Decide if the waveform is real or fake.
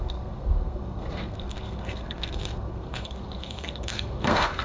fake